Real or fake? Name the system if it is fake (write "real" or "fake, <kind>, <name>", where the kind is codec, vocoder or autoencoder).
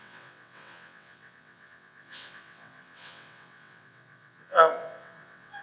fake, vocoder, WaveNeXt